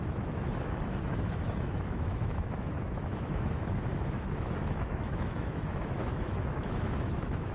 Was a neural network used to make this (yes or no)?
yes